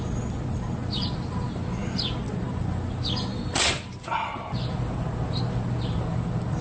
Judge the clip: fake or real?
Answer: real